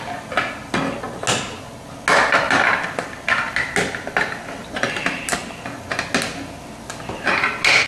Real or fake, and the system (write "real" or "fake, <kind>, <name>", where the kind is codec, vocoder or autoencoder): real